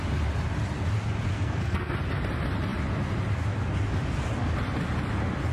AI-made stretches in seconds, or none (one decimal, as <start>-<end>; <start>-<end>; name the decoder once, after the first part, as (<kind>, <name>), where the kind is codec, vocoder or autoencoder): 1.3-1.9 (codec, SNAC)